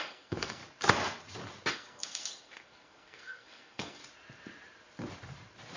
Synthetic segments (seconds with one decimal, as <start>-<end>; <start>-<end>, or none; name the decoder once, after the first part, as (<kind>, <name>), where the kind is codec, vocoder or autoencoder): 0.0-0.6 (codec, SNAC); 1.7-4.0